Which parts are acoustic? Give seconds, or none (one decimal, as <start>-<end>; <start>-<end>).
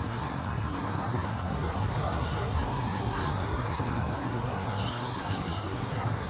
none